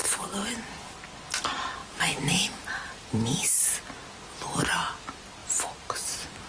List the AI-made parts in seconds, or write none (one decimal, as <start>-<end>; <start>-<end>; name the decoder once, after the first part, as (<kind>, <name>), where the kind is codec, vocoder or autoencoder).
1.8-3.8 (vocoder, BigVGAN v2); 5.4-6.5

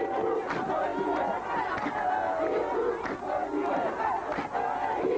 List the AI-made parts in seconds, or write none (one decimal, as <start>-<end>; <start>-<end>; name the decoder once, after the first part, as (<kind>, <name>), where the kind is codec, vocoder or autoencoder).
none